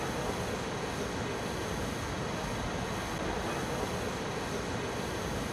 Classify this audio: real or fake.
real